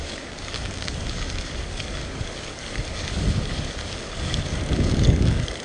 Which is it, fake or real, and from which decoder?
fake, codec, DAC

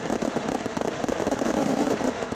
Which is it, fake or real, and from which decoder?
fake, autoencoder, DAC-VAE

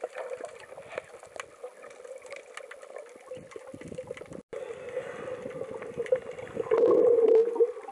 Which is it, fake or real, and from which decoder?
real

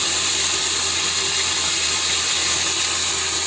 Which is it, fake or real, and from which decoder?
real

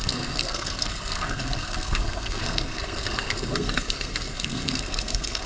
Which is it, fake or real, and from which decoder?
fake, codec, SNAC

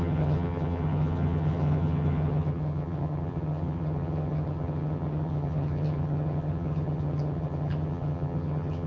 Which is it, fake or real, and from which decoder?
fake, vocoder, HiFi-GAN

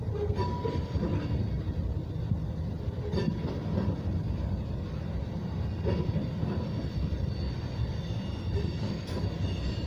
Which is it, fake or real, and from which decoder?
real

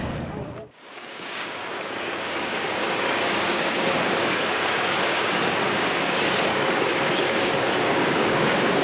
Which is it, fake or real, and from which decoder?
fake, codec, DAC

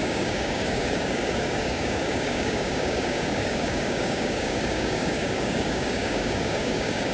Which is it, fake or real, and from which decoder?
fake, codec, DAC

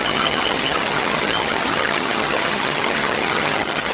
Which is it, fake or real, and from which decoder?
fake, vocoder, HiFi-GAN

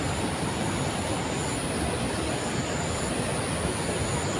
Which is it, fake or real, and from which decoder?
real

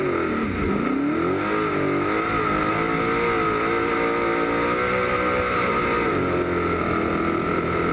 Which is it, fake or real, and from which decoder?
real